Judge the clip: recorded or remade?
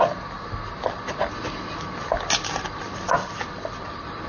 recorded